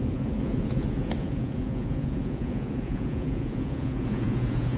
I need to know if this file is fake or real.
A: fake